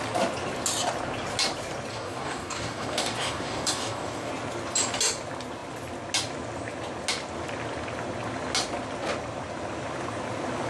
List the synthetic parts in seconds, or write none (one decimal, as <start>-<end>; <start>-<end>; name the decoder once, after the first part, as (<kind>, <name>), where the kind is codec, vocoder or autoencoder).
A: 1.9-4.3 (codec, DAC)